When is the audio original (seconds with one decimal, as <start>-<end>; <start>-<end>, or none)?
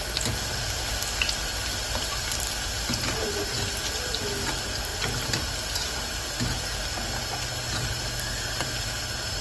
0.0-9.4